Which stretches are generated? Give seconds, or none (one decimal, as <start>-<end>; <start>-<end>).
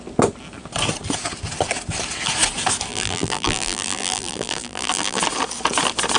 2.9-5.2